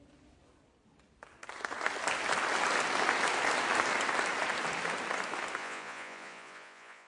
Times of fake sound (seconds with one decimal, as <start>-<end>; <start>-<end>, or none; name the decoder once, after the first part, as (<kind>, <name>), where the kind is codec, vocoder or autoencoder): 5.6-7.1 (vocoder, Vocos)